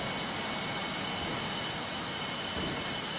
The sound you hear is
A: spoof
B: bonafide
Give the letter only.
B